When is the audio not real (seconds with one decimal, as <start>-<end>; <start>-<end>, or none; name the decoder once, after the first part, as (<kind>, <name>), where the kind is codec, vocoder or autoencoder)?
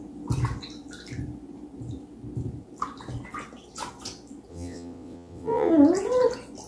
4.5-5.7 (vocoder, WaveNeXt)